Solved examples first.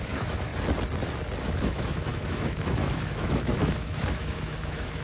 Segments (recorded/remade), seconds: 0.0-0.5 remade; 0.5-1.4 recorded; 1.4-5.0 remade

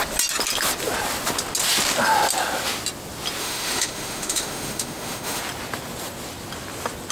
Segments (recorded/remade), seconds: 0.0-3.4 recorded; 3.4-5.4 remade; 5.4-7.1 recorded

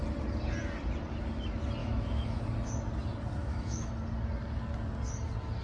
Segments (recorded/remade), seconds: 0.0-1.8 recorded; 1.8-2.4 remade; 2.4-3.4 recorded; 3.4-3.9 remade; 3.9-5.6 recorded

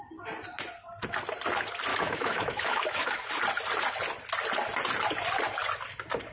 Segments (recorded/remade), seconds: 0.0-1.9 recorded; 1.9-3.3 remade; 3.3-6.3 recorded

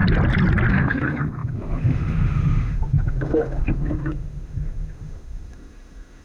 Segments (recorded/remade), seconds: 0.0-0.7 recorded; 0.7-6.2 remade

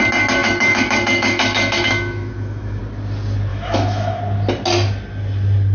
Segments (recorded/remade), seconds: 0.0-0.4 recorded; 0.4-2.8 remade; 2.8-3.5 recorded; 3.5-4.2 remade; 4.2-5.7 recorded